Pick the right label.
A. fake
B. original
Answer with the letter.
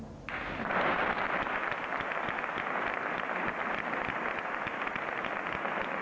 B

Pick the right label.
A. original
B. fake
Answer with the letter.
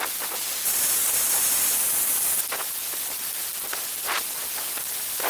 A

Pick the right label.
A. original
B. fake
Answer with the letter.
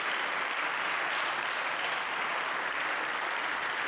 A